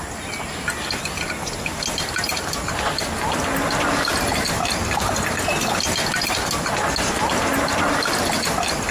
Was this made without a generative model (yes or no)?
yes